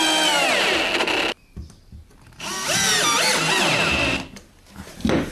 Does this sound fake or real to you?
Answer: real